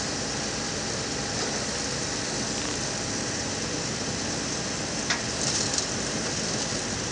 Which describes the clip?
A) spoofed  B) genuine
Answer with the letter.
B